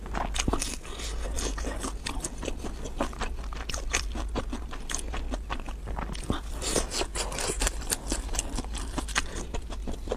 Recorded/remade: recorded